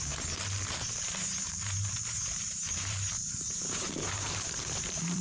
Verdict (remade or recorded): remade